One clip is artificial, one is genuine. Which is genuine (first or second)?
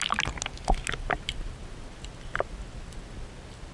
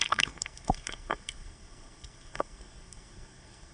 first